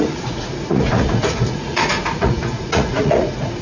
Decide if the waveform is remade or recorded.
remade